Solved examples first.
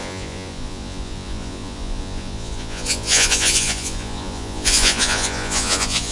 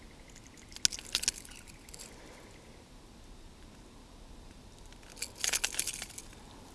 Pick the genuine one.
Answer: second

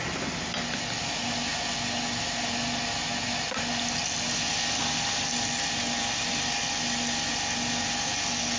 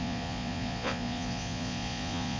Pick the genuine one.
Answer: first